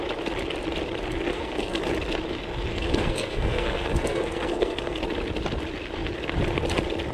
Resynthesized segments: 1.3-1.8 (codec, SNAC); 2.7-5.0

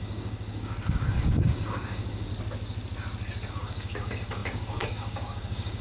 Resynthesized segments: 0.0-2.3 (codec, DAC); 3.5-5.8

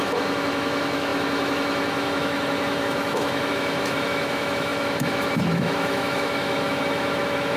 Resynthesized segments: 0.0-7.6 (autoencoder, DAC-VAE)

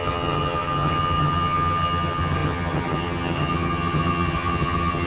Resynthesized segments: 0.0-5.1 (vocoder, HiFi-GAN)